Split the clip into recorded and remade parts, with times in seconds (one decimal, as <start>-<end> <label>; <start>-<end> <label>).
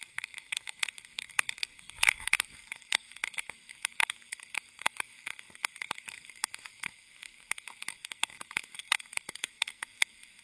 0.0-10.4 remade